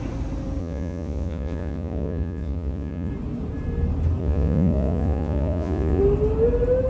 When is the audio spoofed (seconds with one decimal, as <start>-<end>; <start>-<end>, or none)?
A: 0.6-3.1; 4.2-6.0